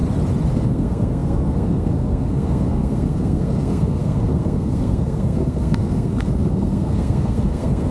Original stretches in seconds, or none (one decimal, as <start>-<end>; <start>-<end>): 0.0-0.5